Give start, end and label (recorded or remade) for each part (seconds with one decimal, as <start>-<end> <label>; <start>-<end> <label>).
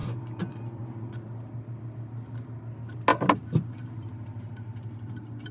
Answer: 0.0-1.1 remade; 1.1-5.5 recorded